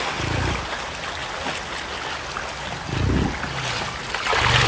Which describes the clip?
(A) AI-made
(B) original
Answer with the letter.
B